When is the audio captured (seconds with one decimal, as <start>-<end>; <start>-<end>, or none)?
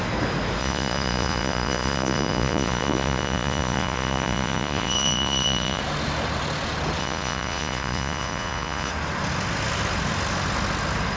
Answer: 0.0-0.6; 5.8-7.0; 8.9-11.2